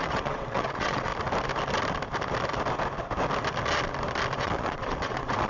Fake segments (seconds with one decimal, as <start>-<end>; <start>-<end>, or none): 0.0-1.1; 4.4-5.5